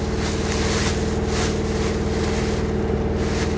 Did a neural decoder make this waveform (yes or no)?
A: no